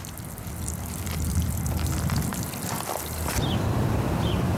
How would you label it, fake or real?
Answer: fake